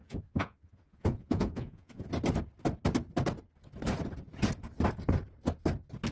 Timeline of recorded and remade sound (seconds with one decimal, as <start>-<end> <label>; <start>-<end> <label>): 0.0-2.1 remade; 2.1-6.1 recorded